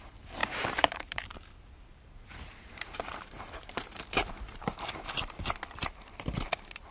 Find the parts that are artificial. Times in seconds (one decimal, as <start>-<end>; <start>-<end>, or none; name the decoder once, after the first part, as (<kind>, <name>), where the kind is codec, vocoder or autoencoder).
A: 0.4-4.3 (vocoder, BigVGAN v2)